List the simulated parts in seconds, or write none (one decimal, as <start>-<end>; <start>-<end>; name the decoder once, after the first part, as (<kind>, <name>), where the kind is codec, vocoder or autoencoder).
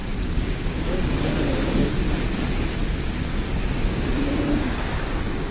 0.0-1.9 (codec, DAC); 3.3-5.5